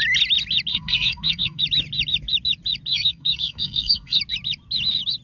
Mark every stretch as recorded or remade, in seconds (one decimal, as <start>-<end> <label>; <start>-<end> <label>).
0.0-0.7 recorded; 0.7-1.6 remade; 1.6-2.9 recorded; 2.9-4.2 remade; 4.2-5.2 recorded